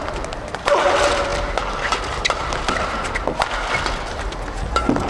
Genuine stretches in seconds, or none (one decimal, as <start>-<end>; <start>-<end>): 0.0-5.1